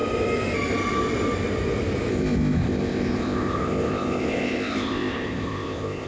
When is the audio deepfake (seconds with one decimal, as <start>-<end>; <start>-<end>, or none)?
2.1-6.1